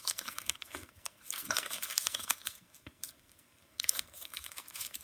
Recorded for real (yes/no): no